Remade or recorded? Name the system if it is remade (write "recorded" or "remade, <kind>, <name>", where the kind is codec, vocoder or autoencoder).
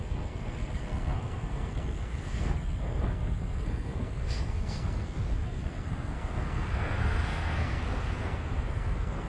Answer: remade, codec, SNAC